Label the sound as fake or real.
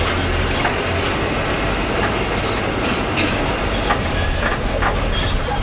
real